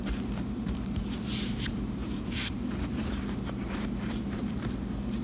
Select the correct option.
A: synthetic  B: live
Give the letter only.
A